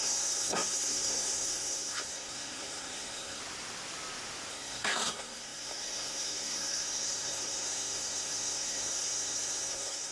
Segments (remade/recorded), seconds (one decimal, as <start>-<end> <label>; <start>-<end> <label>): 0.0-3.4 remade; 3.4-4.5 recorded; 4.5-10.1 remade